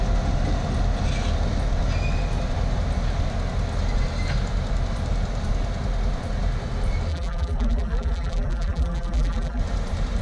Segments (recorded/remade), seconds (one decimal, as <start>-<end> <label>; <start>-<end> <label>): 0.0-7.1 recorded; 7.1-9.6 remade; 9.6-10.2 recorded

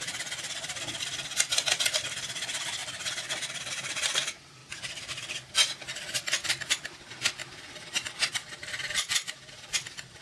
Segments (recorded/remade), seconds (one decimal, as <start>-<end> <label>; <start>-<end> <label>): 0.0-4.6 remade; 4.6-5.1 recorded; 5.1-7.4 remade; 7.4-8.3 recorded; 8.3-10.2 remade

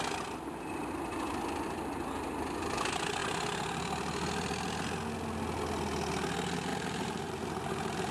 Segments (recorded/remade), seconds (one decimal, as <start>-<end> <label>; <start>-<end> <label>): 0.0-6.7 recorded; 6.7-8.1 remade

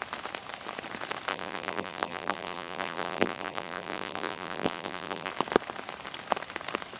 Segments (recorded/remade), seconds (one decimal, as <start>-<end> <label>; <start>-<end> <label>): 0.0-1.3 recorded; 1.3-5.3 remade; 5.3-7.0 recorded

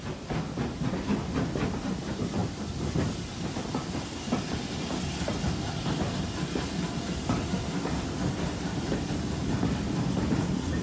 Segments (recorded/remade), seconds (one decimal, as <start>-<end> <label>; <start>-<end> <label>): 0.0-2.4 recorded; 2.4-3.6 remade; 3.6-10.8 recorded

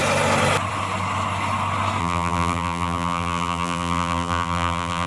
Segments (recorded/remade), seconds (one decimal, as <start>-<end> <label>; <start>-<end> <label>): 0.0-2.0 recorded; 2.0-5.1 remade